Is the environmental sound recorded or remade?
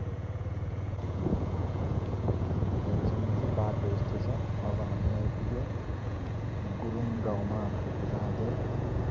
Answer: remade